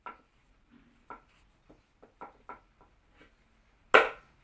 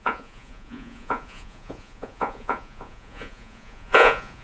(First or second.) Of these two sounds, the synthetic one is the second